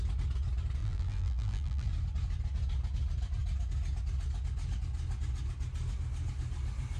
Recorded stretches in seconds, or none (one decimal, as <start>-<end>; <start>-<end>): 0.0-0.8; 1.9-7.0